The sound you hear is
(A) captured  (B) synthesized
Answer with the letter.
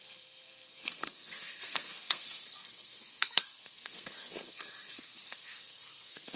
B